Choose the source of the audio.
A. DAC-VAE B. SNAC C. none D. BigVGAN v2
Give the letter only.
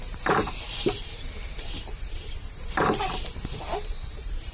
D